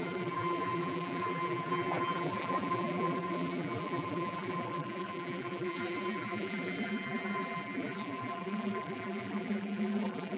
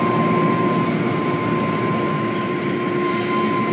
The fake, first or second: first